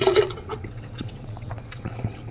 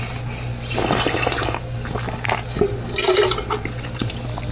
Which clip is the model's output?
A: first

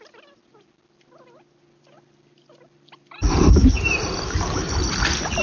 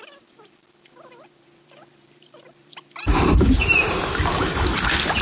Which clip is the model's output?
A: second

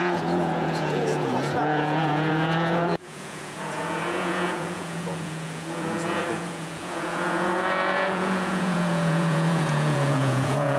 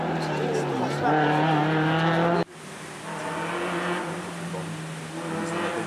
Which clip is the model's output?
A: first